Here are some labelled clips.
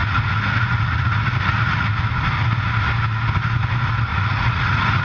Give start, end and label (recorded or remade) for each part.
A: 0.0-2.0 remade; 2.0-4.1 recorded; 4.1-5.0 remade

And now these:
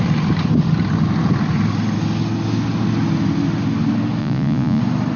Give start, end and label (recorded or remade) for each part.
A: 0.0-4.2 recorded; 4.2-4.8 remade; 4.8-5.2 recorded

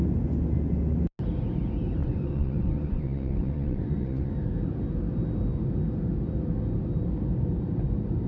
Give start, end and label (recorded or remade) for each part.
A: 0.0-2.0 recorded; 2.0-4.3 remade; 4.3-8.3 recorded

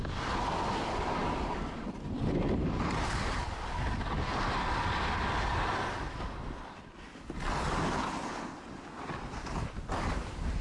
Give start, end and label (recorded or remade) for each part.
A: 0.0-10.6 recorded